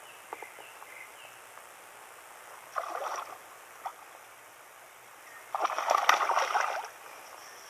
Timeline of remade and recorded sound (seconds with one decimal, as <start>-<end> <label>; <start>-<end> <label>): 0.0-3.9 recorded; 3.9-5.2 remade; 5.2-7.7 recorded